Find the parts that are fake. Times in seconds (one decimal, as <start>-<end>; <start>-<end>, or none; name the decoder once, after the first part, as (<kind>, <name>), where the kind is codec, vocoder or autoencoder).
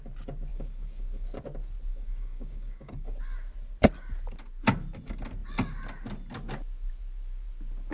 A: 0.5-1.4 (codec, DAC); 1.9-3.2